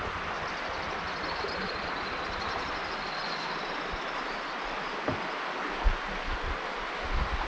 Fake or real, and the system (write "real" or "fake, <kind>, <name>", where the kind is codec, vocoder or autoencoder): real